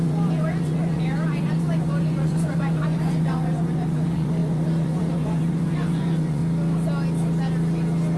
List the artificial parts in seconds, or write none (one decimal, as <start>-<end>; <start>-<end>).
0.0-6.4